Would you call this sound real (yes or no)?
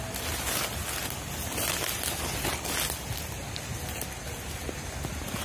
yes